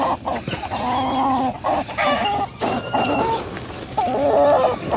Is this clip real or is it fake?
real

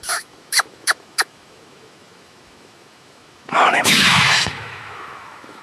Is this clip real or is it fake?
fake